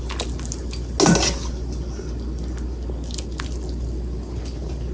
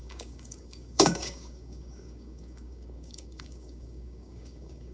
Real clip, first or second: first